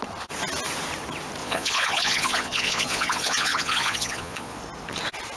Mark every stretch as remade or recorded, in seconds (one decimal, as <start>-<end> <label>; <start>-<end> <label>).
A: 0.0-1.4 recorded; 1.4-4.6 remade; 4.6-5.4 recorded